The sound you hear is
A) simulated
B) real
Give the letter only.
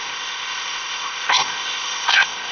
A